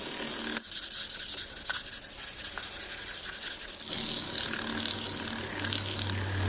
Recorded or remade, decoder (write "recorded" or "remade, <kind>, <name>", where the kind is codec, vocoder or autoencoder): recorded